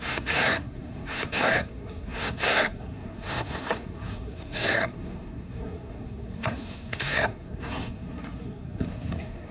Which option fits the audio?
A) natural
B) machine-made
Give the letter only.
B